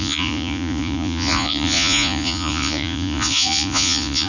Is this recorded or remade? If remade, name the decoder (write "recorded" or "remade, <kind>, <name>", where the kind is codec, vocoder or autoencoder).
remade, vocoder, Vocos